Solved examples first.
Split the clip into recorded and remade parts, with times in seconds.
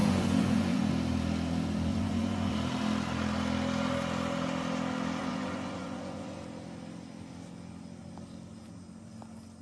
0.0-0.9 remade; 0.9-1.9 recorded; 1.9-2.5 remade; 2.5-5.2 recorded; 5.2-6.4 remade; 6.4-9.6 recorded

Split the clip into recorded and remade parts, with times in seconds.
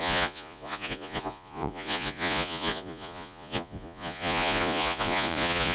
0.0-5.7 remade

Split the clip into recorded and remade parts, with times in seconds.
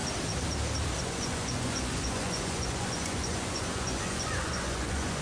0.0-1.0 recorded; 1.0-5.2 remade